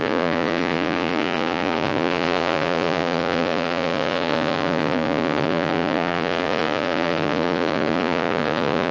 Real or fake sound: fake